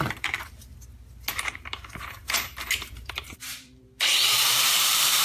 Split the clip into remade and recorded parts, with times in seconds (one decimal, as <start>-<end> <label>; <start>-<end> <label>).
0.0-0.7 remade; 0.7-1.3 recorded; 1.3-5.2 remade